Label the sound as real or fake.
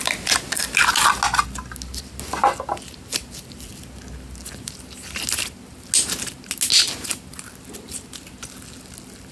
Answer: real